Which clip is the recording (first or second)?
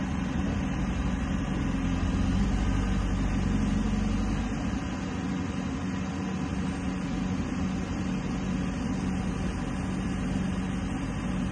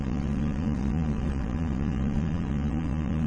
first